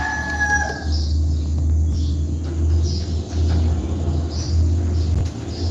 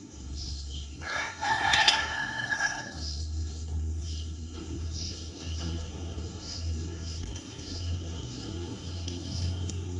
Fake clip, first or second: second